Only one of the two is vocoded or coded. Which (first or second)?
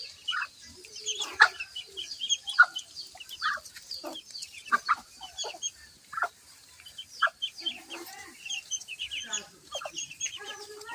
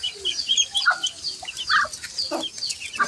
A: first